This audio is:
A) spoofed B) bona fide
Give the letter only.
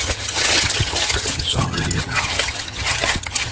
A